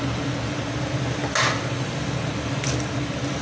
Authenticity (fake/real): real